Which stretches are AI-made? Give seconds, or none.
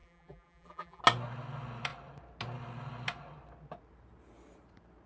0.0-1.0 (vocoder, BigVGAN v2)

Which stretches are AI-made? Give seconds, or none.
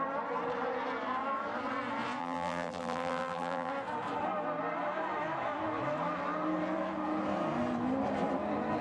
2.2-3.7 (vocoder, BigVGAN v2)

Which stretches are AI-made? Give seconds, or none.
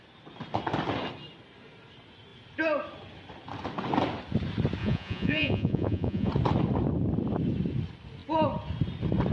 4.8-6.3 (vocoder, Vocos)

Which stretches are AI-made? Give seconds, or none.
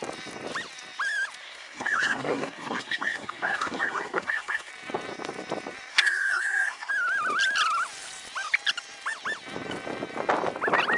1.4-4.7 (codec, SNAC); 5.9-6.9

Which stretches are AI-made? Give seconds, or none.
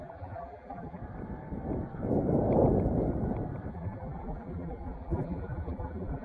0.0-1.0 (vocoder, BigVGAN v2); 3.7-6.2